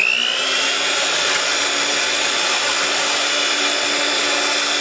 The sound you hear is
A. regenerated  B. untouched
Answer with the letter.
B